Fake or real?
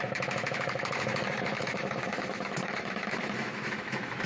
fake